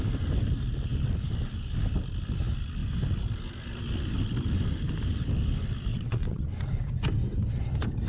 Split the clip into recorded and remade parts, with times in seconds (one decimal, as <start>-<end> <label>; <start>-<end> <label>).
0.0-5.9 recorded; 5.9-6.6 remade; 6.6-8.1 recorded